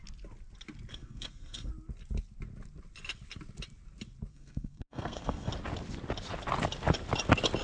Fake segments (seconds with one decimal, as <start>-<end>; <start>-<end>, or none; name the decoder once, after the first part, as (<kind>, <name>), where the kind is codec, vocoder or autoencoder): 0.9-1.7 (codec, SNAC); 4.3-5.5